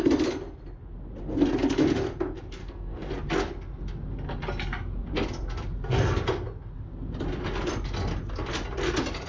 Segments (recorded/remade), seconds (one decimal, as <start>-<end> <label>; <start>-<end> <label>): 0.0-2.6 recorded; 2.6-3.1 remade; 3.1-9.3 recorded